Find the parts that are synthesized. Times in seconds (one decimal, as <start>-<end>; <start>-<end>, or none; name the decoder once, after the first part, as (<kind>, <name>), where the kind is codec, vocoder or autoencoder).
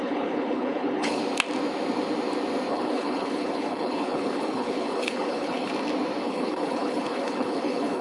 0.0-1.2 (codec, HILCodec); 2.7-5.7; 6.2-8.0